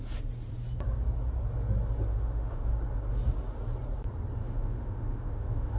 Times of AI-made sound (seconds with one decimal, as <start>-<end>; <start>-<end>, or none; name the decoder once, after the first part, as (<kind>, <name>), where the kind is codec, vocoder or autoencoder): 2.1-2.7 (autoencoder, DAC-VAE); 4.4-5.8